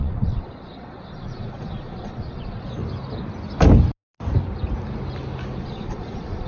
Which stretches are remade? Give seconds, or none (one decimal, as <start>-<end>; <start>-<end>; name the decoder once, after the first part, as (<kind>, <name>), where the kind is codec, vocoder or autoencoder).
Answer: 0.0-2.8 (vocoder, Vocos); 5.6-6.5